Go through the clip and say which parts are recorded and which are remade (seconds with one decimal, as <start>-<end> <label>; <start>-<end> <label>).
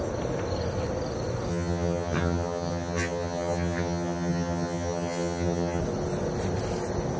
0.0-1.5 recorded; 1.5-5.8 remade; 5.8-7.2 recorded